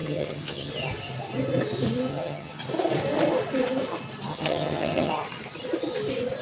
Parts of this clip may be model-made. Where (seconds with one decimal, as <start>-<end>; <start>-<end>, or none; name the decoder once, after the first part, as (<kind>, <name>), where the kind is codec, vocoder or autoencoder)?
0.0-0.7 (vocoder, HiFi-GAN); 2.1-2.6; 4.3-5.1